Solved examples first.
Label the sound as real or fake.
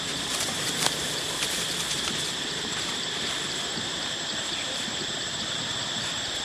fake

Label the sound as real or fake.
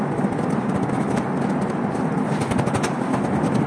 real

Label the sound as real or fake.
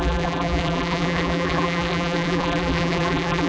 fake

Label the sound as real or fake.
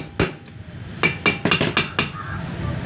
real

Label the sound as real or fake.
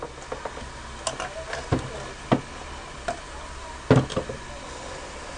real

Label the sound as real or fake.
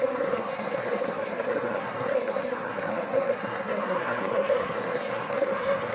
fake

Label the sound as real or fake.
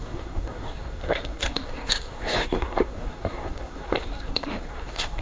fake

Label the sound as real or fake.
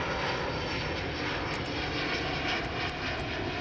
real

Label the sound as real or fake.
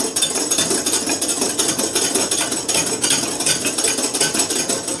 real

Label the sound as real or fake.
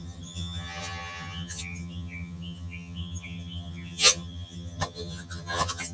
fake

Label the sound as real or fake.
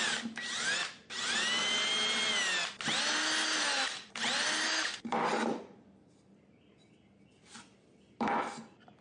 real